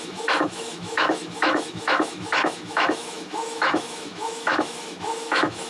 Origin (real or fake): fake